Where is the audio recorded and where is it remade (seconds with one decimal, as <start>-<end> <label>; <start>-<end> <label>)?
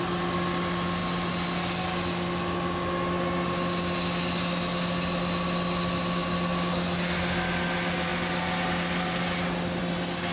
0.0-10.3 recorded